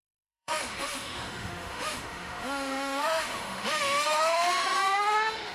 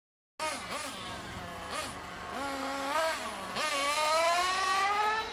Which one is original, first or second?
second